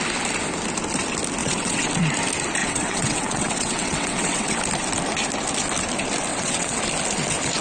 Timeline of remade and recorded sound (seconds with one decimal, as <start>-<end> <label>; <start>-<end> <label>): 0.0-1.4 recorded; 1.4-1.9 remade; 1.9-2.6 recorded; 2.6-4.6 remade; 4.6-6.3 recorded; 6.3-6.8 remade; 6.8-7.6 recorded